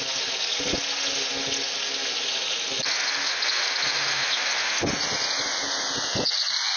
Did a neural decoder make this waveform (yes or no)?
no